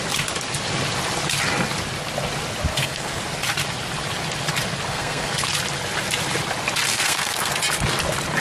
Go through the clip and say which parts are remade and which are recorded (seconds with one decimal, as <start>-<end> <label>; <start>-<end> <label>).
0.0-2.7 recorded; 2.7-3.2 remade; 3.2-4.9 recorded; 4.9-5.5 remade; 5.5-6.9 recorded; 6.9-7.5 remade; 7.5-8.4 recorded

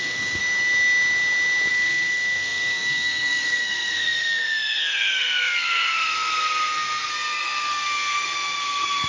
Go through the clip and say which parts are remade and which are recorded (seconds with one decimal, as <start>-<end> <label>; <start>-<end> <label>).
0.0-0.4 remade; 0.4-1.7 recorded; 1.7-9.1 remade

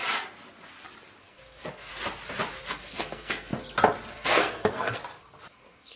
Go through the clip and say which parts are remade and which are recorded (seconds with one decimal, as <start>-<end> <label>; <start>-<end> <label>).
0.0-1.2 recorded; 1.2-1.9 remade; 1.9-2.7 recorded; 2.7-3.5 remade; 3.5-4.1 recorded; 4.1-5.0 remade; 5.0-5.5 recorded; 5.5-6.0 remade

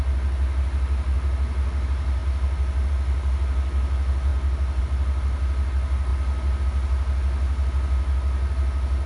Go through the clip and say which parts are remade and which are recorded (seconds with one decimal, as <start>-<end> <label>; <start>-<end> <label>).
0.0-9.1 recorded